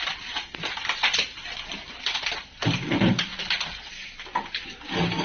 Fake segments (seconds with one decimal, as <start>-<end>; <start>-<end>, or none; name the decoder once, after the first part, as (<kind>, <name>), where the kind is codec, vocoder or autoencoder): 2.1-2.9 (vocoder, BigVGAN v2)